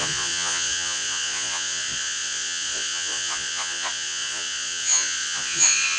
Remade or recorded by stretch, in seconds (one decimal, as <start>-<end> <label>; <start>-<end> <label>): 0.0-6.0 remade